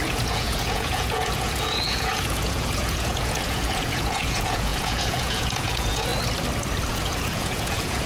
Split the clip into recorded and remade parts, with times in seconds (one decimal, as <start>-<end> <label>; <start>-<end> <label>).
0.0-6.1 remade; 6.1-6.9 recorded; 6.9-8.1 remade